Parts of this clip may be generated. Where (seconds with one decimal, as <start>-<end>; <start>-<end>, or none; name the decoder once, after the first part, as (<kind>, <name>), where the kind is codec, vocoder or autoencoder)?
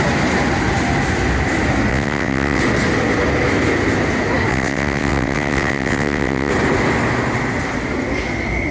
1.9-2.6 (vocoder, WaveNeXt); 4.5-6.5